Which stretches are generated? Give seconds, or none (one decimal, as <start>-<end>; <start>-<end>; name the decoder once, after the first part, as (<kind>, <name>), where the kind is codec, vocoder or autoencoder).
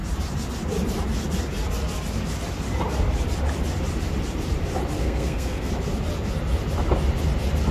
5.0-5.7 (codec, SNAC)